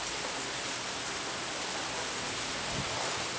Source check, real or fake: real